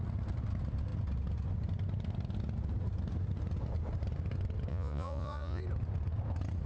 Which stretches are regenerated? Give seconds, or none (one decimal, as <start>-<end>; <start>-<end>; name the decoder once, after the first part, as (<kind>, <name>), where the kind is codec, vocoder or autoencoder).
4.7-5.6 (vocoder, Vocos)